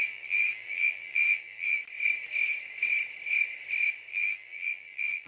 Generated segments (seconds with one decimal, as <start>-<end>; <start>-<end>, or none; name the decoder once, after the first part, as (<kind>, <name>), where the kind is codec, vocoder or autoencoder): 0.0-1.8 (vocoder, BigVGAN v2); 4.1-5.3